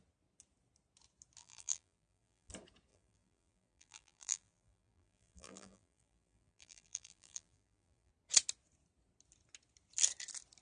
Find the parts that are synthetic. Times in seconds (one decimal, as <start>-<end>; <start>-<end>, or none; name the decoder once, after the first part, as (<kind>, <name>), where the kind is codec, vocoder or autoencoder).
1.4-2.5 (vocoder, BigVGAN v2); 2.9-8.1